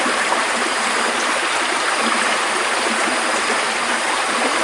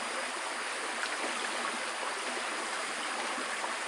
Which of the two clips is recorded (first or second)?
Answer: second